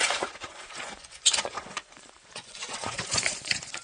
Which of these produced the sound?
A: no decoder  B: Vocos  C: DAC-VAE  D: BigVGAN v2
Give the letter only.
B